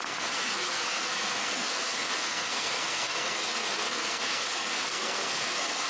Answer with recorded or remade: remade